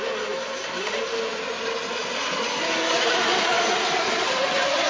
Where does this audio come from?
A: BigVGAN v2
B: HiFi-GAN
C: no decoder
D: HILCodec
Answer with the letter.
C